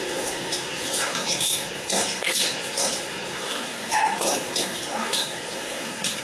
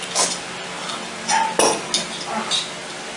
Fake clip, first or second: first